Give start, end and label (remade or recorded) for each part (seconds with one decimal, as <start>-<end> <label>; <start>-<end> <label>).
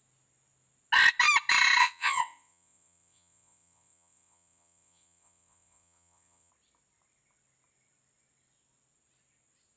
0.0-1.8 recorded; 1.8-6.5 remade; 6.5-9.8 recorded